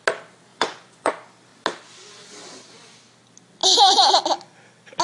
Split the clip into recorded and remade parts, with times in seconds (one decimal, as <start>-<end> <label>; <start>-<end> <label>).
0.0-0.5 recorded; 0.5-1.1 remade; 1.1-5.0 recorded